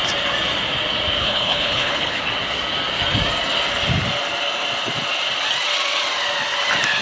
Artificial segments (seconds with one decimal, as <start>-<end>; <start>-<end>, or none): 1.2-2.2